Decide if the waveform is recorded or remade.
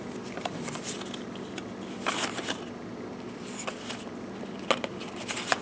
recorded